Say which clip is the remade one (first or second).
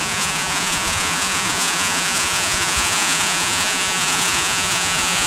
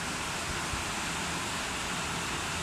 first